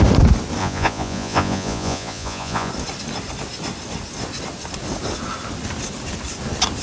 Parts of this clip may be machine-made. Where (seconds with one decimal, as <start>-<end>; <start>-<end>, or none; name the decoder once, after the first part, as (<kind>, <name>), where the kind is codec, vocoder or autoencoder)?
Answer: 0.6-2.7 (vocoder, Vocos)